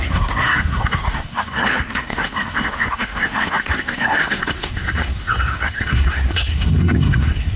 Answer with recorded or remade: remade